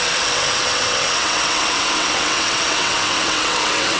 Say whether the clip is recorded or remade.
remade